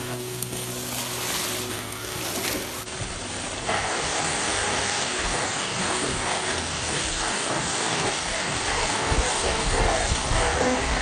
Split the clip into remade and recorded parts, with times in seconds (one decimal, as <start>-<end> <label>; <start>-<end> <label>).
0.0-0.7 remade; 0.7-1.7 recorded; 1.7-2.2 remade; 2.2-3.6 recorded; 3.6-11.0 remade